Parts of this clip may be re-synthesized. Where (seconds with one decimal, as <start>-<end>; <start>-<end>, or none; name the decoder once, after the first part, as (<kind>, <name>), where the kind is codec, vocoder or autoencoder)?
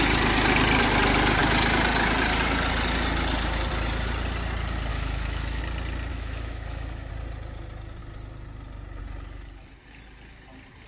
4.9-5.6 (autoencoder, DAC-VAE); 6.1-7.1